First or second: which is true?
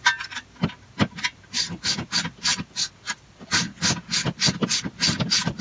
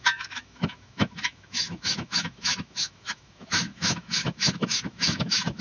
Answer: first